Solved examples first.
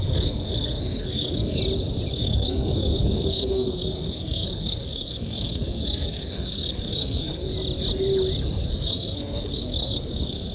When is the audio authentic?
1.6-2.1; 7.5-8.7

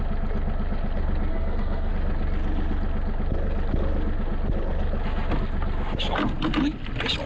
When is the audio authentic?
0.0-1.3; 1.9-7.3